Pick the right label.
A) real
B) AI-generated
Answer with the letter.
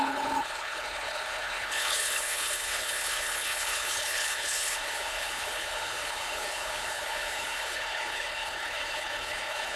B